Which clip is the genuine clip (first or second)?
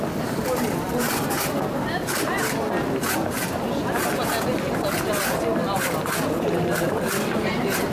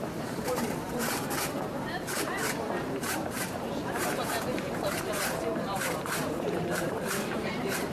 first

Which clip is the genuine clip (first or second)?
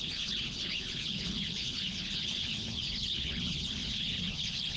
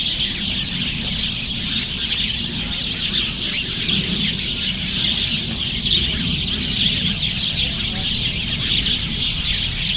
second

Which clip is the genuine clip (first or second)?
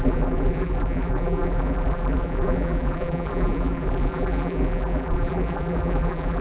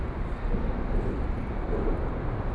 second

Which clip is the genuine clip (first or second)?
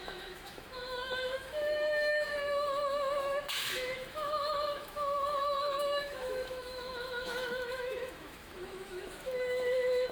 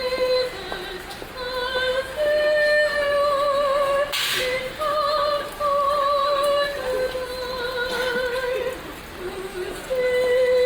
second